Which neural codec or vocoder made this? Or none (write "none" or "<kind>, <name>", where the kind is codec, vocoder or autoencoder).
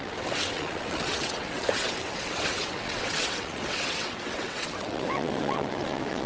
vocoder, WaveNeXt